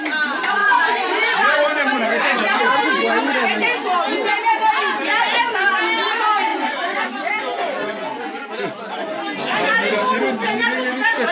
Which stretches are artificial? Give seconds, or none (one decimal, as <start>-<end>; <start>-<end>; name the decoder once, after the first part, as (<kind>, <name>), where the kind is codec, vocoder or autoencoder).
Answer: 0.6-2.6 (vocoder, Vocos); 6.5-7.3; 7.8-8.4